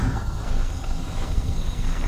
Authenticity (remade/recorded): remade